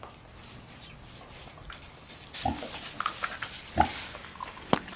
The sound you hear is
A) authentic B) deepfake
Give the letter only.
A